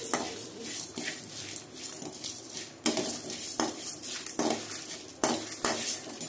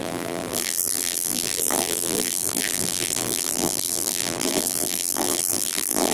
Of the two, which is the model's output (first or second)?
second